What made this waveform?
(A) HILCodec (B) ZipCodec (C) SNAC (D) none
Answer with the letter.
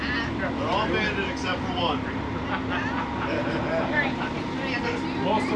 D